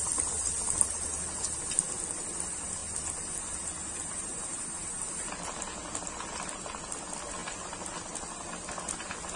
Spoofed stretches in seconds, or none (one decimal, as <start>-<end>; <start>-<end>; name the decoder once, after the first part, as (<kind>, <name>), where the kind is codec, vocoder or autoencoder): none